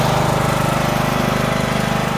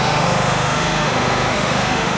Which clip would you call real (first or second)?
first